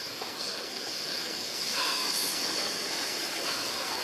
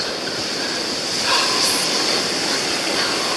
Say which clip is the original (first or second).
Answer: second